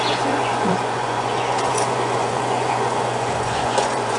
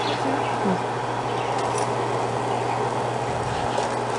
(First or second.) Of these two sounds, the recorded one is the second